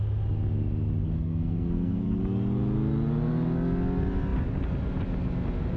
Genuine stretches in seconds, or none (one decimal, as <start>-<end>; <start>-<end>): 0.0-1.0; 2.2-5.8